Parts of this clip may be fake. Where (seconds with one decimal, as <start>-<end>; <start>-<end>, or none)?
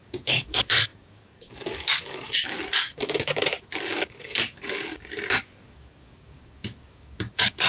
0.0-7.7